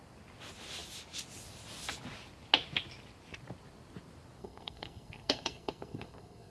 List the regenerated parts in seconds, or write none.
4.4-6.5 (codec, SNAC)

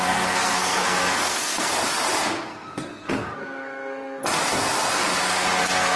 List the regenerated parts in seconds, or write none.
0.0-1.7 (codec, SNAC); 2.4-4.2; 5.6-6.0

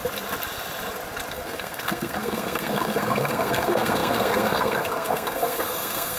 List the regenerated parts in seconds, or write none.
1.3-6.2 (codec, SNAC)

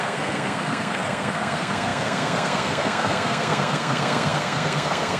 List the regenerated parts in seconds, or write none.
0.0-5.2 (codec, SNAC)

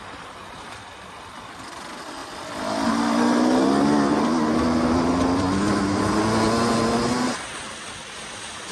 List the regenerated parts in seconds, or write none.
none

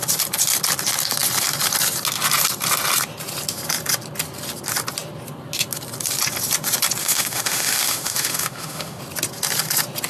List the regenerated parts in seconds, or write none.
7.0-9.0 (autoencoder, DAC-VAE)

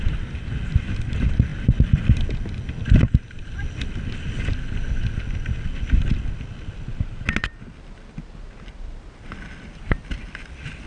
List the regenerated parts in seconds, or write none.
none